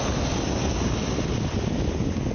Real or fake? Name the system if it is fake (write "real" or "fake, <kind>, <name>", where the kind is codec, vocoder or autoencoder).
real